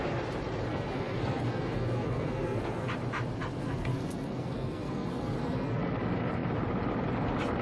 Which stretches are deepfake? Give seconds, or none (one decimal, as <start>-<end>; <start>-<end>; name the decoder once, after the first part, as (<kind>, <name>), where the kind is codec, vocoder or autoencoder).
0.7-2.9 (codec, SNAC); 3.6-5.8